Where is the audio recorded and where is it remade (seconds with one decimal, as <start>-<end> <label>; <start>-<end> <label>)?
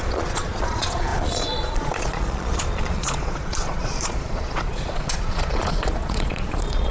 0.0-6.9 remade